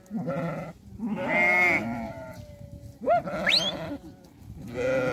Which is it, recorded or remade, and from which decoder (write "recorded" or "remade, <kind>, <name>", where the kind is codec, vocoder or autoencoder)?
recorded